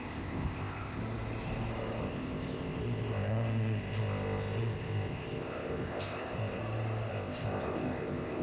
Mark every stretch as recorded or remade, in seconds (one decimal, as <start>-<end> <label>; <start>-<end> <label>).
0.0-1.0 remade; 1.0-2.0 recorded; 2.0-6.6 remade; 6.6-7.1 recorded; 7.1-8.4 remade